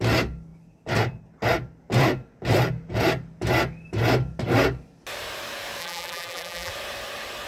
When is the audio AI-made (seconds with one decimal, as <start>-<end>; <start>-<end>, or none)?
5.8-6.7